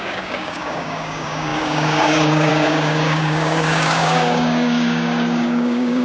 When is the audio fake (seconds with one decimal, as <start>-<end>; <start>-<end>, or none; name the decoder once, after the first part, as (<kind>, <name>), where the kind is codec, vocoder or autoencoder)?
0.0-6.0 (codec, DAC)